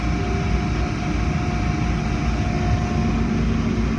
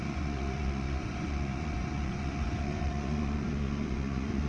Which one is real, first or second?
first